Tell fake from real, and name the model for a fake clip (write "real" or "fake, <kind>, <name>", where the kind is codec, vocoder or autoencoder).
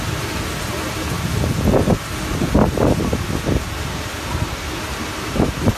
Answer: real